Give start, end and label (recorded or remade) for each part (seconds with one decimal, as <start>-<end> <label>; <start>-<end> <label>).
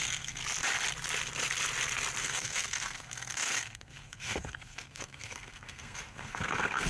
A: 0.0-0.4 remade; 0.4-2.2 recorded; 2.2-6.9 remade